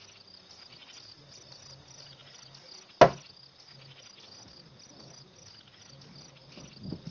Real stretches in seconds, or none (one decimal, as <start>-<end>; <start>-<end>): 0.0-7.1